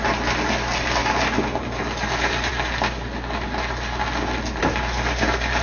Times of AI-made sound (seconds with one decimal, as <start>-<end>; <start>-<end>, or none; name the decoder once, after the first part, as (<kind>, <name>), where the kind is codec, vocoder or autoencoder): none